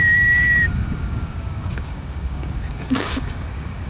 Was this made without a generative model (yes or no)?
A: no